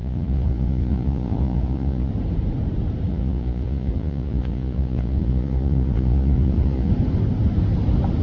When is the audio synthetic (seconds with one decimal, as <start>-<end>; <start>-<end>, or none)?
0.0-2.1; 3.1-6.9